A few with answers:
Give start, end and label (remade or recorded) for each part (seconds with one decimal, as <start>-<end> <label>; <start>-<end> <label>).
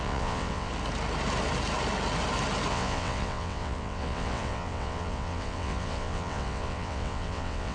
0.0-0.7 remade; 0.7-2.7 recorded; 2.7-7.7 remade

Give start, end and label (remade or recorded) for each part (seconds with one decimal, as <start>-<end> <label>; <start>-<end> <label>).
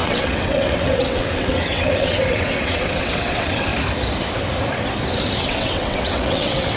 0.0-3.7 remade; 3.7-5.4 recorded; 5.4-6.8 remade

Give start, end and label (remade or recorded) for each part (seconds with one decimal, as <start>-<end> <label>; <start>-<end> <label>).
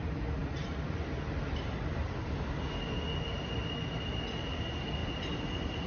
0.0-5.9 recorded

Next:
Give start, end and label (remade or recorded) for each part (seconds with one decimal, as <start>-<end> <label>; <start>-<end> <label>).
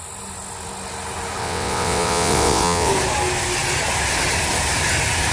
0.0-1.4 recorded; 1.4-2.9 remade; 2.9-5.3 recorded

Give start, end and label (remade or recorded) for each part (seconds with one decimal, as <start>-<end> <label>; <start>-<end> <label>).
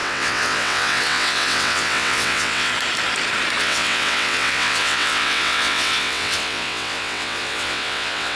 0.0-2.7 remade; 2.7-3.6 recorded; 3.6-8.4 remade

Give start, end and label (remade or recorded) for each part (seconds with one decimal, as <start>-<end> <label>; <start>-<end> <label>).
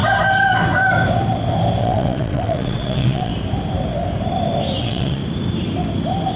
0.0-1.8 recorded; 1.8-3.3 remade; 3.3-4.8 recorded; 4.8-5.2 remade; 5.2-6.4 recorded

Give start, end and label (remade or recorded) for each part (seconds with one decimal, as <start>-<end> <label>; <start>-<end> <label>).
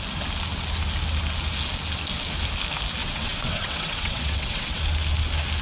0.0-3.0 recorded; 3.0-4.8 remade; 4.8-5.6 recorded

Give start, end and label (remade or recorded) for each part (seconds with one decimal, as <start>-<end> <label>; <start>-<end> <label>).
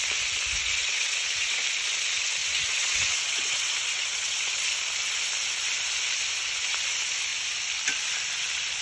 0.0-0.8 recorded; 0.8-1.6 remade; 1.6-2.4 recorded; 2.4-4.6 remade; 4.6-8.8 recorded